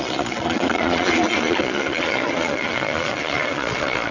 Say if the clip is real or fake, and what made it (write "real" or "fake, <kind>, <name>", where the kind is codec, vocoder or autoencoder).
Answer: fake, vocoder, Vocos